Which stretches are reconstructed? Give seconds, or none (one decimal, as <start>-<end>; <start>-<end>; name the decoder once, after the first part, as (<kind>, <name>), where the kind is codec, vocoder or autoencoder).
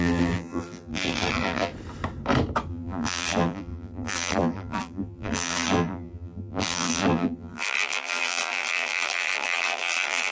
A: 0.0-1.7 (vocoder, BigVGAN v2); 2.7-10.3